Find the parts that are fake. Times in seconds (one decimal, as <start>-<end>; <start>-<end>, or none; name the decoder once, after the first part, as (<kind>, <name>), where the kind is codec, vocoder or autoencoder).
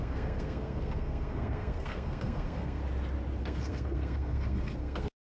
0.0-2.8 (codec, SNAC); 3.4-5.3